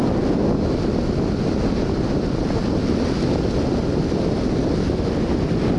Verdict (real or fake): real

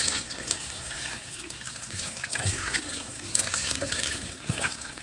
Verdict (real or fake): fake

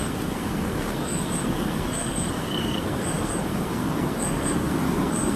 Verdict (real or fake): fake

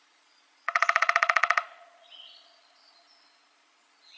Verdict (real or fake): fake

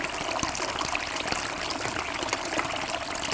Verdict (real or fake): real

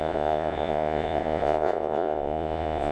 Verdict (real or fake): fake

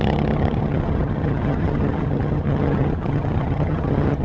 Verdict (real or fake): fake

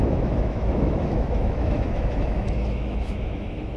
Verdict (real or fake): fake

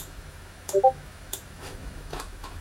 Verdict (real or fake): fake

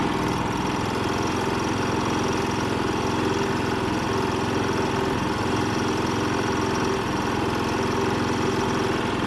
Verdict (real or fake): real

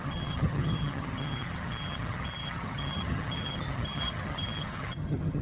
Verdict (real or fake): fake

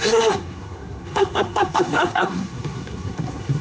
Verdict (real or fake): fake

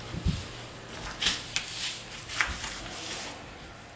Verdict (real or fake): real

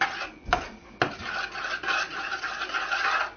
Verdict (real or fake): real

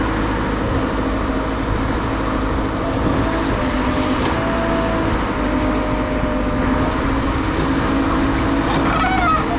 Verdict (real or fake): real